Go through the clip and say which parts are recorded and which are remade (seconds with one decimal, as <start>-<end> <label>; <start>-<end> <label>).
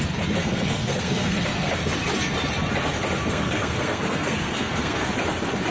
0.0-0.4 recorded; 0.4-1.7 remade; 1.7-3.3 recorded; 3.3-5.1 remade; 5.1-5.7 recorded